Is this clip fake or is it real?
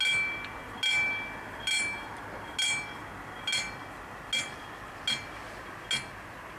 real